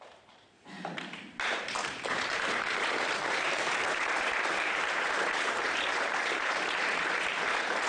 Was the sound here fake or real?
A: fake